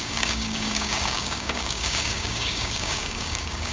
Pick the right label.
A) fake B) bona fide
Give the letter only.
A